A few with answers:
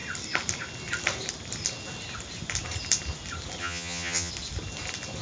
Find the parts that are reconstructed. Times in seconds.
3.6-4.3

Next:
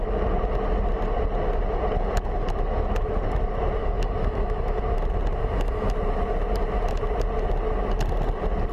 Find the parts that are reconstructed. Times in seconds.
3.8-4.8; 5.4-5.9

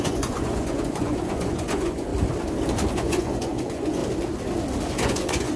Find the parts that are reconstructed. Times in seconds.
0.0-2.1; 2.9-4.0; 4.9-5.6

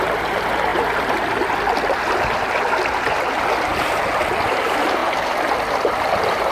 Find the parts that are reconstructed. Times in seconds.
none